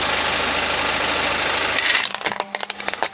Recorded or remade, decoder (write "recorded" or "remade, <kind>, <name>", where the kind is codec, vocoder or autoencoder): recorded